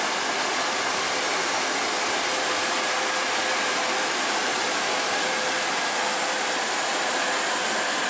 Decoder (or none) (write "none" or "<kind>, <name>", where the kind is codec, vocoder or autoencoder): vocoder, BigVGAN v2